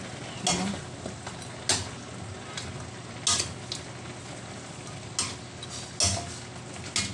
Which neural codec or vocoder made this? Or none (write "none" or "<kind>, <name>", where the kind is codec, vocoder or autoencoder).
none